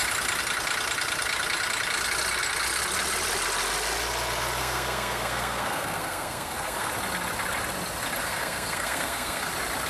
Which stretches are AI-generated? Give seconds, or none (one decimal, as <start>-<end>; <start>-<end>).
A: 4.6-6.9; 8.2-9.5